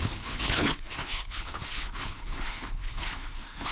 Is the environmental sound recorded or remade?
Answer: remade